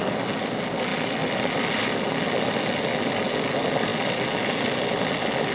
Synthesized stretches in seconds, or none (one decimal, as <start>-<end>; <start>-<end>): none